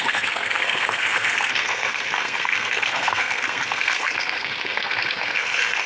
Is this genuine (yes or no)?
no